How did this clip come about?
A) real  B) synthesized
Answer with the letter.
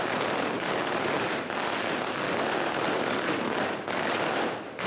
A